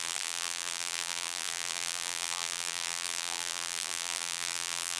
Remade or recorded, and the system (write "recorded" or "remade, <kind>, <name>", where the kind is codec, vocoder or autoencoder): remade, vocoder, BigVGAN v2